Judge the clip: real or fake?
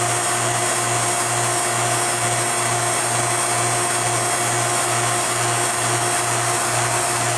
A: real